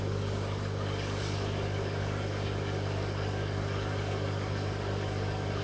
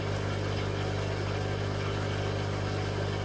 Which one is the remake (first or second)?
first